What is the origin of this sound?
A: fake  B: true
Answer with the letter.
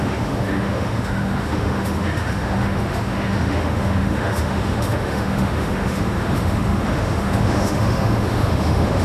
A